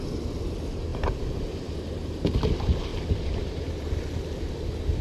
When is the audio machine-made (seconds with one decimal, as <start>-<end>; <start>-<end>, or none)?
2.9-4.4